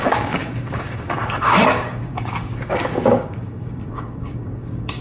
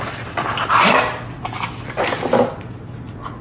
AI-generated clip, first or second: first